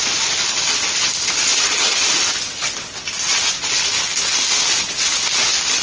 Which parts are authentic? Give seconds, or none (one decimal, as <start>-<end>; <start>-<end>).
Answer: 0.0-5.8